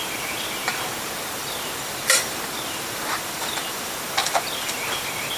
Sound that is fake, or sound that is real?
fake